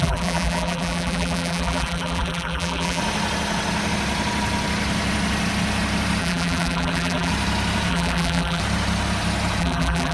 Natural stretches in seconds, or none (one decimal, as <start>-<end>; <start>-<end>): 3.0-6.2; 7.3-7.9; 8.6-9.6